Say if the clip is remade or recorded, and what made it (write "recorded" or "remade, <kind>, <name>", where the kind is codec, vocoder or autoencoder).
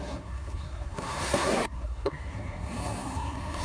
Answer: remade, codec, SNAC